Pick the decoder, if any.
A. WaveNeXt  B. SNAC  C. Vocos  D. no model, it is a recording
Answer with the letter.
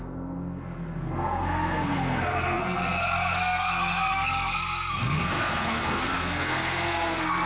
B